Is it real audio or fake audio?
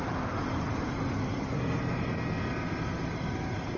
real